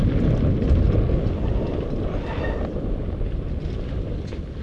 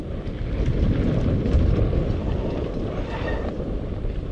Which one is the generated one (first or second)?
second